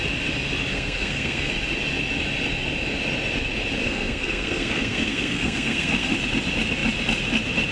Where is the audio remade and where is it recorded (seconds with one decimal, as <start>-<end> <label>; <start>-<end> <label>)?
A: 0.0-0.7 recorded; 0.7-1.5 remade; 1.5-3.8 recorded; 3.8-6.1 remade; 6.1-7.7 recorded